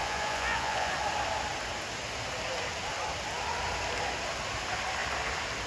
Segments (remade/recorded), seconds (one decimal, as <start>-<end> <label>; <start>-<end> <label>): 0.0-0.9 remade; 0.9-5.7 recorded